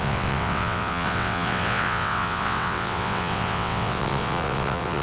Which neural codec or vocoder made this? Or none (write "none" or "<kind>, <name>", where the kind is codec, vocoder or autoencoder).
vocoder, WaveNeXt